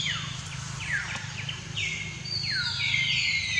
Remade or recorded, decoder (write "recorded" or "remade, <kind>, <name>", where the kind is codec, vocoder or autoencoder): recorded